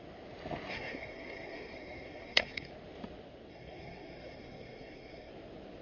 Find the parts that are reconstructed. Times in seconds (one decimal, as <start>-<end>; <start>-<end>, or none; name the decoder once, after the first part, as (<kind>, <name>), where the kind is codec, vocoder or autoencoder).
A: 0.7-2.7 (codec, SNAC); 3.5-5.3